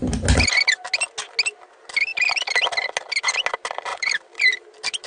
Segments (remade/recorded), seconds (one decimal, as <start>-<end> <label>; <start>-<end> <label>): 0.0-3.9 recorded; 3.9-5.1 remade